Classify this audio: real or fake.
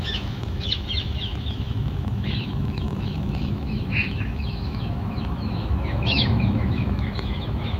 fake